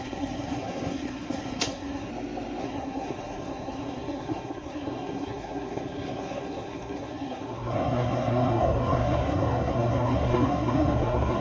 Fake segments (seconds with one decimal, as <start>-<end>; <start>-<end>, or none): 0.0-2.1; 2.6-11.4

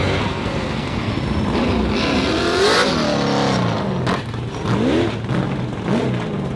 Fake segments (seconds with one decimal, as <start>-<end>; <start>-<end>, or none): 0.0-1.1

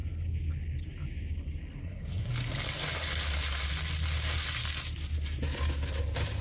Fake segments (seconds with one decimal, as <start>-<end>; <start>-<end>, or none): 1.8-2.3

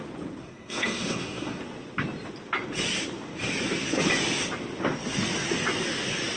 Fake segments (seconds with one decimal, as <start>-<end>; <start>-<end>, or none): 0.4-1.6

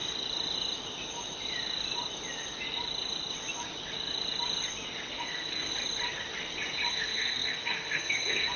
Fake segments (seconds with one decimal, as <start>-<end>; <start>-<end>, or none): 5.1-5.7; 6.9-8.6